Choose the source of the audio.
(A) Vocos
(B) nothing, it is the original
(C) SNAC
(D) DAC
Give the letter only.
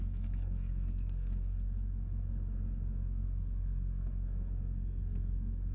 C